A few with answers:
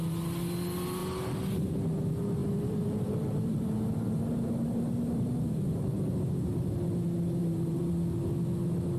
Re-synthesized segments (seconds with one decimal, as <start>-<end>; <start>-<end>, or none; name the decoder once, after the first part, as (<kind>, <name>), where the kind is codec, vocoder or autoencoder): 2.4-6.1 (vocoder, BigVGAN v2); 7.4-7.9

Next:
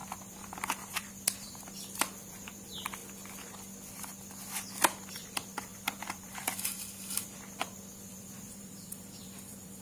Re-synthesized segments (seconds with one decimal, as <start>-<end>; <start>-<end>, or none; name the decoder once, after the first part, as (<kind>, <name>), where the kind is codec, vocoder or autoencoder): 0.0-3.0 (vocoder, BigVGAN v2); 5.1-9.8

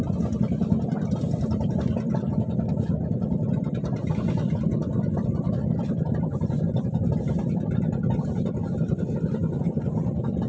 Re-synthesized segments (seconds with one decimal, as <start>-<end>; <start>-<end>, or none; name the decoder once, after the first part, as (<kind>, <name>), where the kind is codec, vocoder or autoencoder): 9.4-10.1 (vocoder, BigVGAN v2)

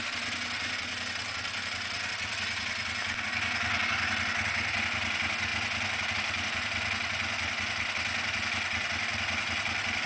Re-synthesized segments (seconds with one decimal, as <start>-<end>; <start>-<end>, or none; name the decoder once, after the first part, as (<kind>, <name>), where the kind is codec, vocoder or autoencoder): none

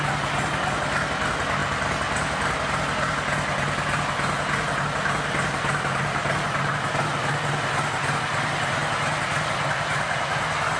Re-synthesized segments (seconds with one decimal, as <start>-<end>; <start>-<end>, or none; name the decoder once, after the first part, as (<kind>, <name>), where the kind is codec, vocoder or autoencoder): none

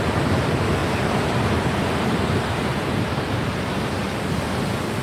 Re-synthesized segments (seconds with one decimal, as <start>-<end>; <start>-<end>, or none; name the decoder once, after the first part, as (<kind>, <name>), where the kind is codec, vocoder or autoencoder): 0.8-3.8 (vocoder, BigVGAN v2)

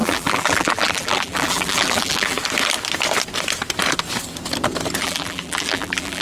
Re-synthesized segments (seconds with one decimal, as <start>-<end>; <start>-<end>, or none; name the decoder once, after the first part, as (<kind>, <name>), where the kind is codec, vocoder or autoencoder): 0.0-2.4 (vocoder, BigVGAN v2); 5.0-6.2